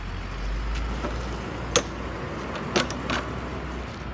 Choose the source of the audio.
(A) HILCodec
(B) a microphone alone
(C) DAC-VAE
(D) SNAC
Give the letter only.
B